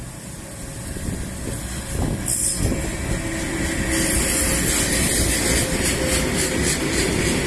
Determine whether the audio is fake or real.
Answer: real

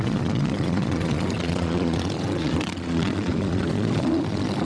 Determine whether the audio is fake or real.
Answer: fake